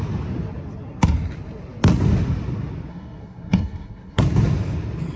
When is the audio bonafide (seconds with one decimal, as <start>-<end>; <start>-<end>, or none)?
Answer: 0.0-2.9; 4.2-5.2